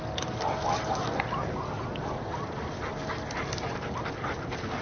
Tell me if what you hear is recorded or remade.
recorded